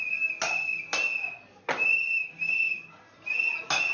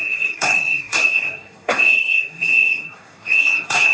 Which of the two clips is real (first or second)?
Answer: first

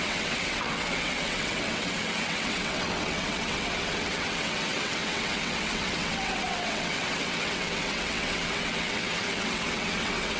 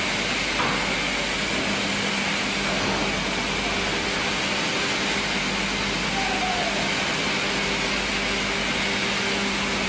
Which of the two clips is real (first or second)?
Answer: second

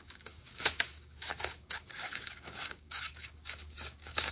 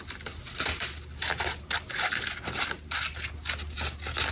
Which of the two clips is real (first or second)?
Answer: second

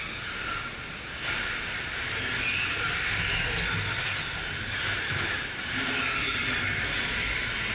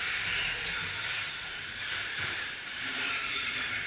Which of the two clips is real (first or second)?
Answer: first